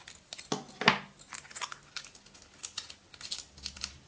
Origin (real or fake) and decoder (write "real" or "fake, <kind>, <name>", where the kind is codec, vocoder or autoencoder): real